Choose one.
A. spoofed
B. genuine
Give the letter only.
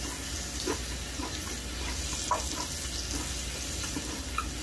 B